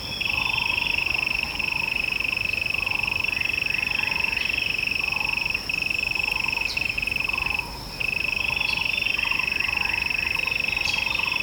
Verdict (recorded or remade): recorded